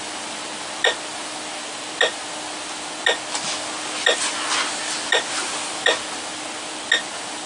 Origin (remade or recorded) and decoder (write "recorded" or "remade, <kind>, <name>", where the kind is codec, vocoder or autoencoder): recorded